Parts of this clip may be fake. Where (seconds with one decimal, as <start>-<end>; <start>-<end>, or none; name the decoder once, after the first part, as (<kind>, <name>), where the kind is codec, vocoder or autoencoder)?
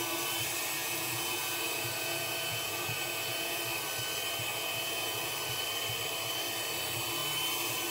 0.8-3.6 (vocoder, Vocos); 4.5-5.3